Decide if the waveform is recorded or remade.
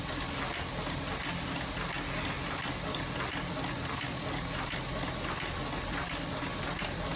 recorded